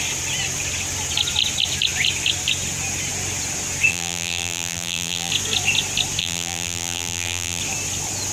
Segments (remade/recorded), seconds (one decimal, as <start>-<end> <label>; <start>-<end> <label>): 0.0-3.9 recorded; 3.9-5.3 remade; 5.3-6.2 recorded; 6.2-7.6 remade; 7.6-8.3 recorded